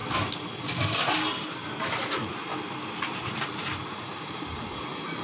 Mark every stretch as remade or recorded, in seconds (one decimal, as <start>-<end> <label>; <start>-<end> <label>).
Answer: 0.0-2.5 remade; 2.5-3.1 recorded; 3.1-5.2 remade